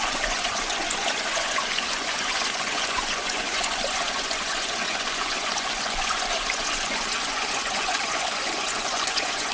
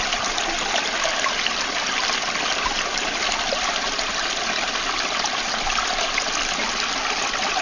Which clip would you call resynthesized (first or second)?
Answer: first